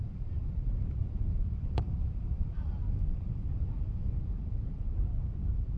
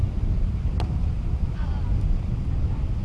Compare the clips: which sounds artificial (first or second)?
first